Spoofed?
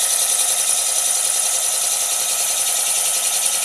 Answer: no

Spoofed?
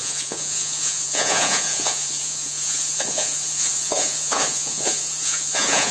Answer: yes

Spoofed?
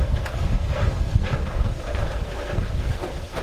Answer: yes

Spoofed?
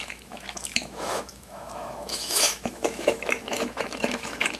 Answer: yes